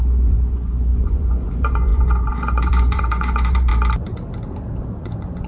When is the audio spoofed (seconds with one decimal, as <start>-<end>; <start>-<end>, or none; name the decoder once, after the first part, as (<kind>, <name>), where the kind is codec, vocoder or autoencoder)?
0.0-3.7 (vocoder, Vocos); 4.8-5.5